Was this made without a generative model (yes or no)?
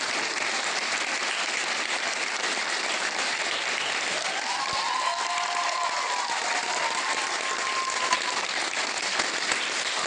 yes